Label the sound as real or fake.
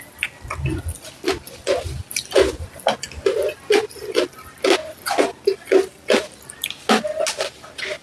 real